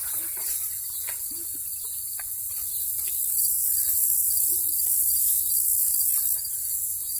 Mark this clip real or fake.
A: real